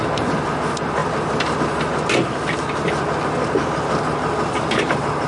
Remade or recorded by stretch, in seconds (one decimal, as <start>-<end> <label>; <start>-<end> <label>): 0.0-5.3 recorded